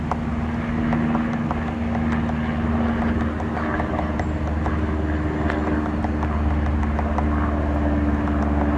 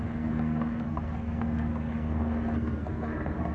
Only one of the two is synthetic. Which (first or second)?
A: second